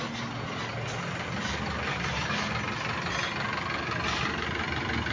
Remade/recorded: recorded